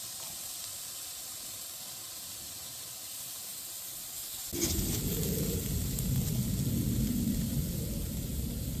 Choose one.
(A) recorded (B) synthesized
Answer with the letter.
A